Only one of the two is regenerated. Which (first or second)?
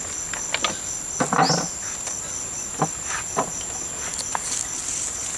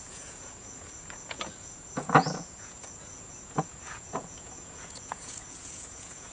second